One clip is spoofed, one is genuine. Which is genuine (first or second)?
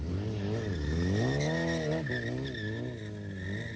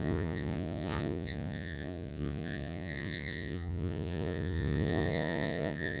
first